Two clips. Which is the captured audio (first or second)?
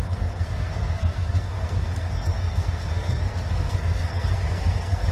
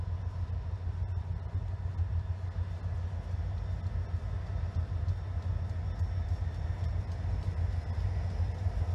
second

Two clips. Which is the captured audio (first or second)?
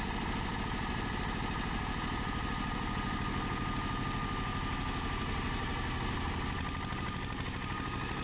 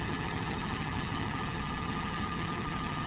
first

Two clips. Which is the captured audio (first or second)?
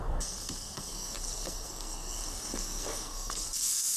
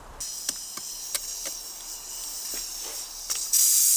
second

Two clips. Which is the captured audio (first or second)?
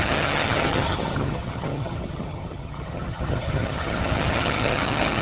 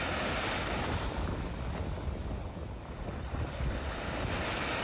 second